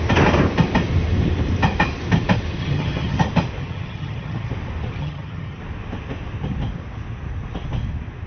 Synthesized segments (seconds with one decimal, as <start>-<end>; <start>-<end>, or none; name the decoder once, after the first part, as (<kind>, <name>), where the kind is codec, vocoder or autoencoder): 2.6-3.2 (vocoder, HiFi-GAN); 3.6-4.5; 5.0-5.6